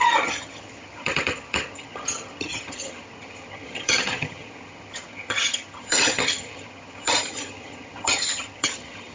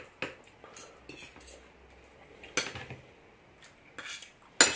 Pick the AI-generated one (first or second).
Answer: first